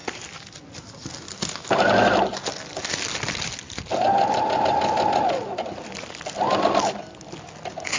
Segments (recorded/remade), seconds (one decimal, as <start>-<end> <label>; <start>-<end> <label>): 0.0-8.0 recorded

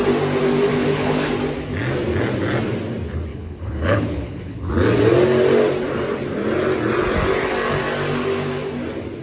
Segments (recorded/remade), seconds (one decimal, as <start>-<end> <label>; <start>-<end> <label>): 0.0-0.7 recorded; 0.7-1.3 remade; 1.3-3.3 recorded; 3.3-4.7 remade; 4.7-9.2 recorded

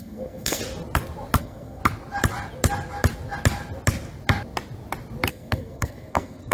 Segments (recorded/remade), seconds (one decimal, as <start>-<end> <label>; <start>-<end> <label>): 0.0-0.6 remade; 0.6-1.4 recorded; 1.4-1.8 remade; 1.8-5.3 recorded; 5.3-6.5 remade

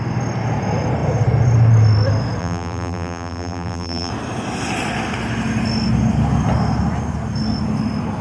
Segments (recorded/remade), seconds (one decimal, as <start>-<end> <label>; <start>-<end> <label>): 0.0-2.4 recorded; 2.4-4.1 remade; 4.1-8.2 recorded

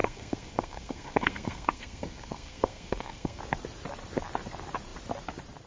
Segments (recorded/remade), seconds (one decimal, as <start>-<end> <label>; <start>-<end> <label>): 0.0-3.4 remade; 3.4-5.7 recorded